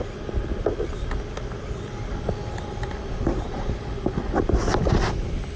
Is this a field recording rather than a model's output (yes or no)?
yes